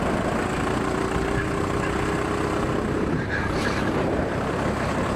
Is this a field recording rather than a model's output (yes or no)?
yes